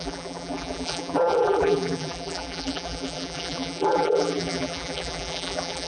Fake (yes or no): yes